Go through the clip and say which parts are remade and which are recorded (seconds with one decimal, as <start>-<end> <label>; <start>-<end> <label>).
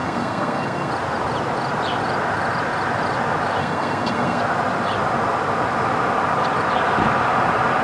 0.0-0.9 remade; 0.9-3.6 recorded; 3.6-4.4 remade; 4.4-7.8 recorded